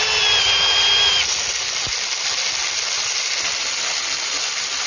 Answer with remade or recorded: recorded